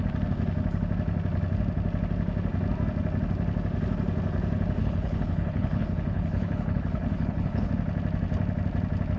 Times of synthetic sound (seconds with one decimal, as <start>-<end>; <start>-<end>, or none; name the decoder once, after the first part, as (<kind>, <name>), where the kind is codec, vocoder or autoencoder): 4.8-7.7 (codec, HILCodec)